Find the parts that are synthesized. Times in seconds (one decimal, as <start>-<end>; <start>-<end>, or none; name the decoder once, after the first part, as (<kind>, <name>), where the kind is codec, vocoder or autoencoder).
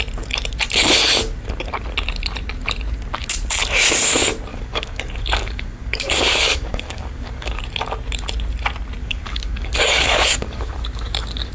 4.5-7.6 (codec, DAC); 9.0-11.5